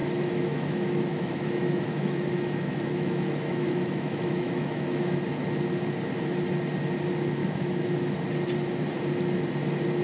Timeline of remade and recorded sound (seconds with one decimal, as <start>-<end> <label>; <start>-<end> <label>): 0.0-5.2 remade; 5.2-7.4 recorded; 7.4-8.2 remade; 8.2-10.0 recorded